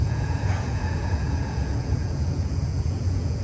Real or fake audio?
fake